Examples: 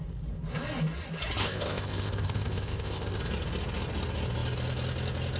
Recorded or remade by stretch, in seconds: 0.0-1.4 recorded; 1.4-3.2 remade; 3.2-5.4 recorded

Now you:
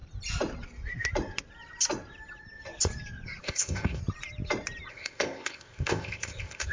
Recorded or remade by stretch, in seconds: 0.0-3.4 recorded; 3.4-4.0 remade; 4.0-4.9 recorded; 4.9-6.7 remade

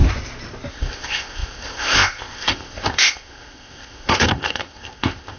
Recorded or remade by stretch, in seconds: 0.0-0.7 recorded; 0.7-5.4 remade

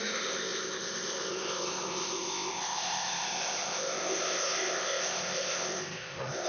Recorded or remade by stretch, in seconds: 0.0-6.5 remade

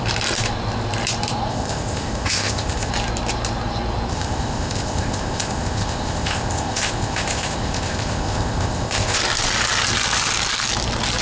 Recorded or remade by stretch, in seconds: 0.0-1.5 recorded; 1.5-2.9 remade; 2.9-4.1 recorded; 4.1-9.2 remade; 9.2-11.2 recorded

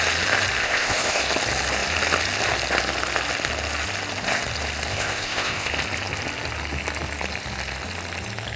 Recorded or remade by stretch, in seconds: 0.0-0.6 recorded; 0.6-1.2 remade; 1.2-4.9 recorded; 4.9-5.7 remade; 5.7-8.6 recorded

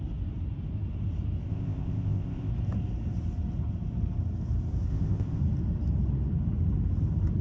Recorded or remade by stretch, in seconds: 0.0-1.5 recorded; 1.5-2.5 remade; 2.5-4.9 recorded; 4.9-5.4 remade; 5.4-7.4 recorded